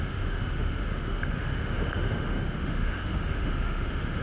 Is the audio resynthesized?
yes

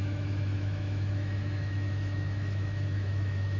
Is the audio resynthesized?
yes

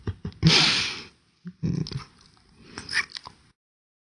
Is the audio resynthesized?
no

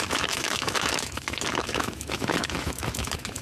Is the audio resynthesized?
yes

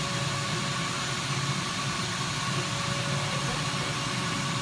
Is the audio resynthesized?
no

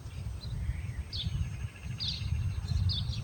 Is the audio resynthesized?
no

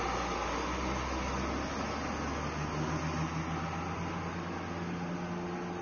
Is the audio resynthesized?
no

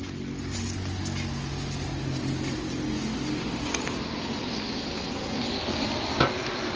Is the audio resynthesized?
no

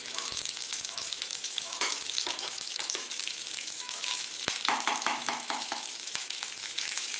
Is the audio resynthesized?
yes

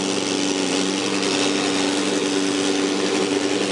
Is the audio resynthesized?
no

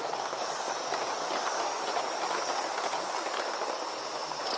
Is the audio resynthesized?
no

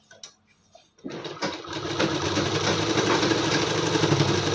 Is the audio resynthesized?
no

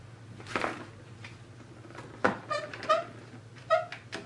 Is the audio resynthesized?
no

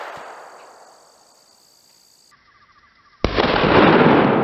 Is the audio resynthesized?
no